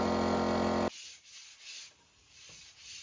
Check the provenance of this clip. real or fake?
real